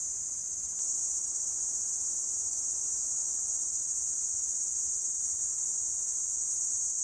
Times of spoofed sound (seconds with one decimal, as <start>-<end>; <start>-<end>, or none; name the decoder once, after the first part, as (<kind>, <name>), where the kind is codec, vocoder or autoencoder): 0.0-3.2 (vocoder, BigVGAN v2); 3.8-4.7; 6.5-7.0